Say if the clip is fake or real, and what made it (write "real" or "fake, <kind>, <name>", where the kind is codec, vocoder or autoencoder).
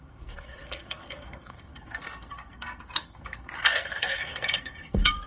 fake, codec, SNAC